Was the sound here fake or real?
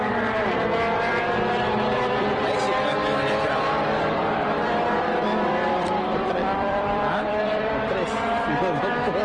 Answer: fake